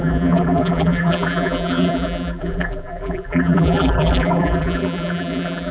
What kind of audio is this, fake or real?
fake